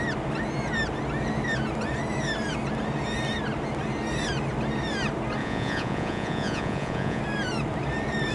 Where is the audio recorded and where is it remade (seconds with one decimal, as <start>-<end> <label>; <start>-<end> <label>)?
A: 0.0-5.4 recorded; 5.4-7.2 remade; 7.2-8.3 recorded